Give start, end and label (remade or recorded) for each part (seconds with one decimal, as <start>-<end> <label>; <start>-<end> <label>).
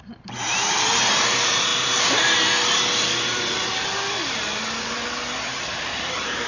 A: 0.0-1.7 remade; 1.7-5.6 recorded; 5.6-6.5 remade